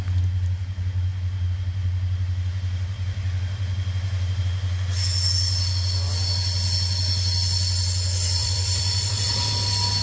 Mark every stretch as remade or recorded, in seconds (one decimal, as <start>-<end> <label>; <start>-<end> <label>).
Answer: 0.0-8.4 recorded; 8.4-9.5 remade; 9.5-10.0 recorded